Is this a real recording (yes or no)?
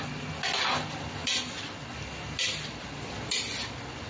yes